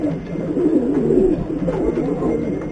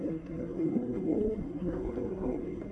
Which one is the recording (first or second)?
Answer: first